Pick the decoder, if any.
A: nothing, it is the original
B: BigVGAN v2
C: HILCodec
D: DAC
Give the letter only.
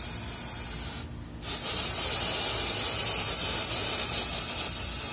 A